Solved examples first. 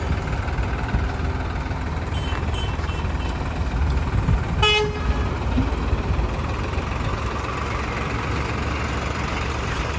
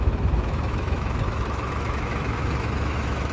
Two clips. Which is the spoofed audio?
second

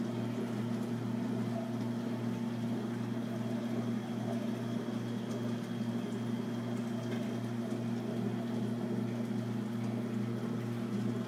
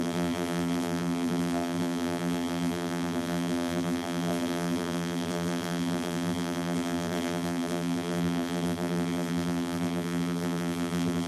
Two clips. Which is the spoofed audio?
second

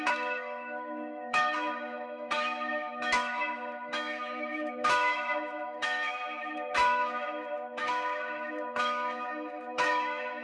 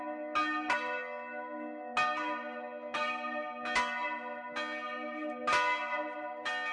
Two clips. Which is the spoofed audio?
first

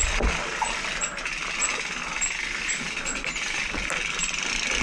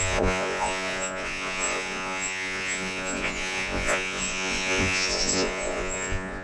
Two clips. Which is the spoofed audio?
second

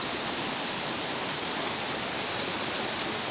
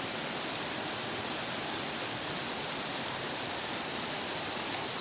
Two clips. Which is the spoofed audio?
first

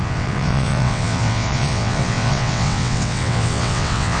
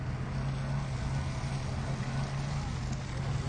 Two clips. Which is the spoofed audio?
first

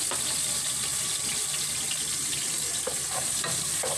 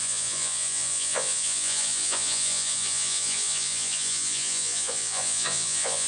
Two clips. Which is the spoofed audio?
second